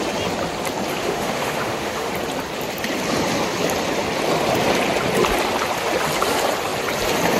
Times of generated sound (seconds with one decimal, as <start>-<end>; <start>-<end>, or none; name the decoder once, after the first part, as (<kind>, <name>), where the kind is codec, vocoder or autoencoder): 1.0-2.1 (autoencoder, DAC-VAE)